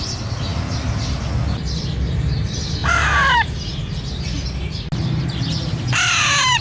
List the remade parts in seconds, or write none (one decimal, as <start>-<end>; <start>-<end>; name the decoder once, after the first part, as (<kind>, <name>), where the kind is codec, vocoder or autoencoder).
none